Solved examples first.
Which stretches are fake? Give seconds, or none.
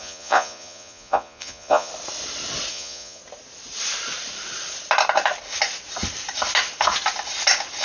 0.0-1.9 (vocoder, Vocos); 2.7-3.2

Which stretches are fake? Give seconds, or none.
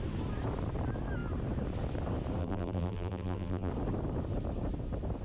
2.4-3.7 (vocoder, BigVGAN v2)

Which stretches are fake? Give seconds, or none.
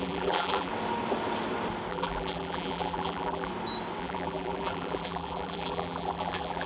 0.0-0.7 (vocoder, BigVGAN v2); 1.9-3.5; 4.0-6.7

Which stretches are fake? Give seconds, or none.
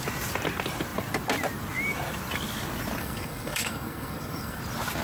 3.0-4.6 (codec, SNAC)